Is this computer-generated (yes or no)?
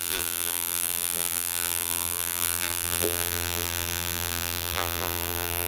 yes